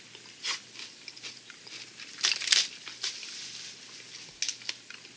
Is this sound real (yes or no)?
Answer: yes